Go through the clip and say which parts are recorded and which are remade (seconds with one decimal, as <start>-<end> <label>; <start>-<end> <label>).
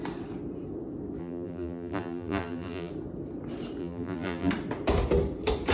0.0-1.2 recorded; 1.2-2.9 remade; 2.9-3.8 recorded; 3.8-4.5 remade; 4.5-5.7 recorded